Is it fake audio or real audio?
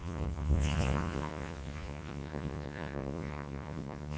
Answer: fake